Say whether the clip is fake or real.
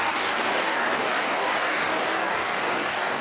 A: fake